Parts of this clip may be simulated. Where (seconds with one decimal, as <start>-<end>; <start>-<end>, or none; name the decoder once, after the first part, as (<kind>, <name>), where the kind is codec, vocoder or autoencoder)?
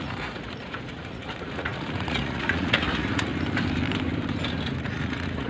0.0-3.3 (vocoder, Vocos); 4.8-5.5